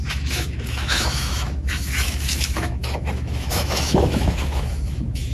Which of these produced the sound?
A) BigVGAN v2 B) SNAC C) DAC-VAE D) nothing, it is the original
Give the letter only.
C